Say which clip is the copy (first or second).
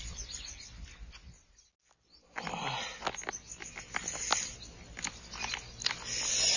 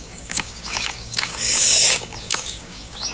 second